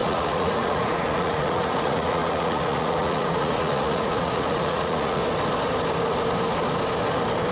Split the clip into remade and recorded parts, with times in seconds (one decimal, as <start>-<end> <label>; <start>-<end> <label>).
0.0-5.2 remade; 5.2-7.5 recorded